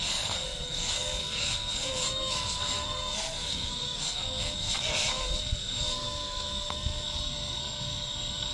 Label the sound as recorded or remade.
remade